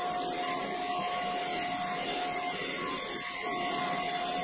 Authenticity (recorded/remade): recorded